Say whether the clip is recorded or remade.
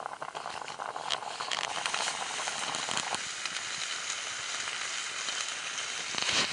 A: recorded